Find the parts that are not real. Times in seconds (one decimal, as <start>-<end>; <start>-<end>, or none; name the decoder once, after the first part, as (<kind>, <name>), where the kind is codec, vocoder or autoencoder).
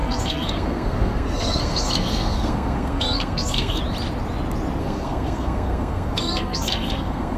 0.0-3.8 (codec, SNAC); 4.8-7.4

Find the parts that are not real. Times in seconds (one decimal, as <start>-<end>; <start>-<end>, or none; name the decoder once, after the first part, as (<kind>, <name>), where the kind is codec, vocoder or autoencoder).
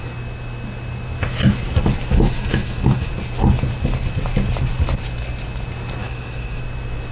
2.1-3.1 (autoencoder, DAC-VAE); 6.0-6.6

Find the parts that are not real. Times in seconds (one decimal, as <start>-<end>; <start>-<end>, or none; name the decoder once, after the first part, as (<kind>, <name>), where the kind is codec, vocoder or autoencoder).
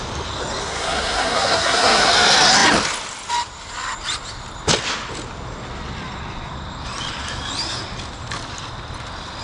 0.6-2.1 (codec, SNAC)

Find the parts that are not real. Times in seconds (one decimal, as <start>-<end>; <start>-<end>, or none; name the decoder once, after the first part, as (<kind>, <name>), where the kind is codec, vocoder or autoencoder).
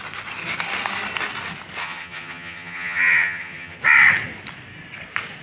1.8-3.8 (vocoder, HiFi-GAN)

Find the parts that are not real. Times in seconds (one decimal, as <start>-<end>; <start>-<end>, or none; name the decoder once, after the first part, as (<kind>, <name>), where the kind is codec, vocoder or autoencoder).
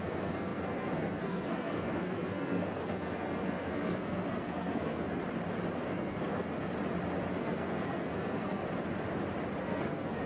0.0-5.2 (codec, SNAC); 5.8-6.7; 7.4-8.6; 9.6-10.3